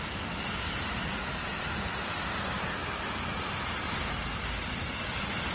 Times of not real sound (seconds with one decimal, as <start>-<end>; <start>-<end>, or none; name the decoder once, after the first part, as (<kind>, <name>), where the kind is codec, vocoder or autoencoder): 1.4-2.4 (vocoder, BigVGAN v2)